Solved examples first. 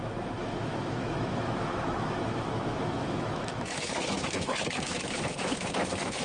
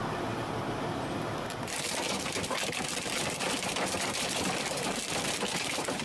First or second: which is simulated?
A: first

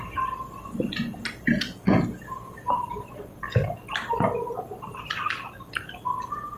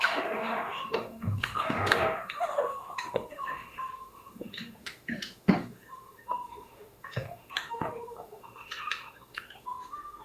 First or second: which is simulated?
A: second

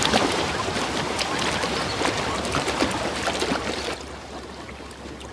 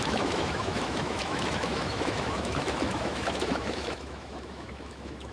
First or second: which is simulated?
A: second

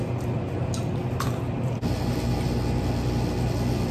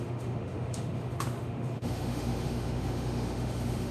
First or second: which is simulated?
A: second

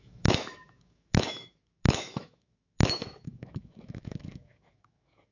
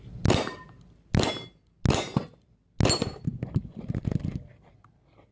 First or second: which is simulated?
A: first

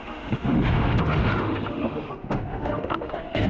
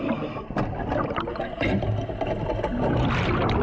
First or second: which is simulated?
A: first